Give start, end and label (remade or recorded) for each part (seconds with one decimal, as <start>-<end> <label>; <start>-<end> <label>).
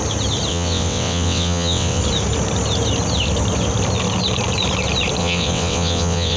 0.0-0.5 recorded; 0.5-2.0 remade; 2.0-5.2 recorded; 5.2-6.4 remade